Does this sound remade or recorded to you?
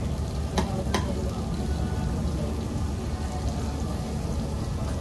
recorded